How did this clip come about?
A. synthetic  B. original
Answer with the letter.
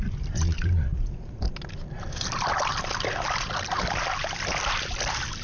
B